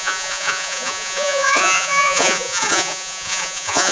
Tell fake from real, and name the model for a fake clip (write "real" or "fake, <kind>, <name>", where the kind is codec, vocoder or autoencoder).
fake, vocoder, Vocos